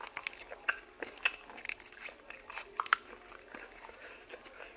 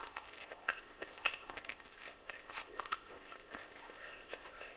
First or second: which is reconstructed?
second